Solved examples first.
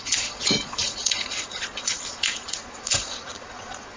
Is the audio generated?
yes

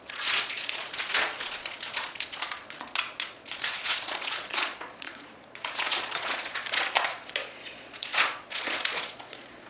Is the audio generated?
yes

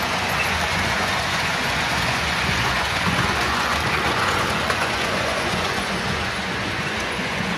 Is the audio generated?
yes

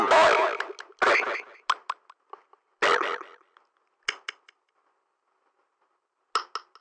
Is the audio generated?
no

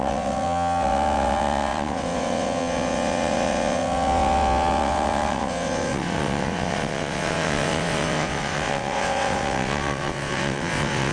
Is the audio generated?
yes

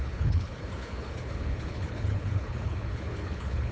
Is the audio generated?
yes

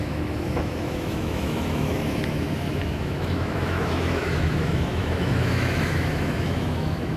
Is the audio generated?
yes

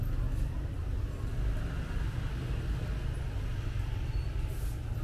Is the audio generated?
no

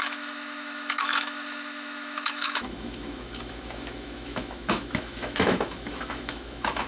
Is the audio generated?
yes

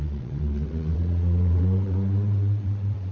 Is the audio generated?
yes